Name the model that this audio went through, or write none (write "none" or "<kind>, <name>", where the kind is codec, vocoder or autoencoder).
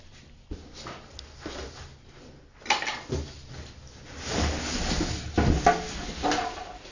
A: none